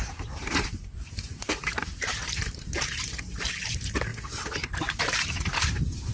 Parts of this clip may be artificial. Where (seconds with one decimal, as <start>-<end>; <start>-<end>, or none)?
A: 0.0-4.1; 5.0-6.1